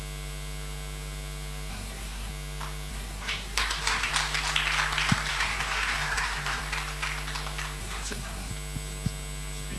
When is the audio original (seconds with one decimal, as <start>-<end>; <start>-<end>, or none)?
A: 0.0-1.7; 2.3-2.9; 4.1-5.3; 6.6-7.8; 8.5-9.8